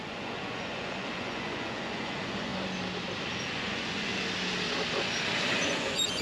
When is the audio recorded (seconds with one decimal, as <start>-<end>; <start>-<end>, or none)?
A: 2.5-3.5; 4.1-5.5